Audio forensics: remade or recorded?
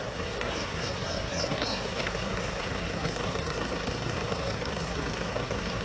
remade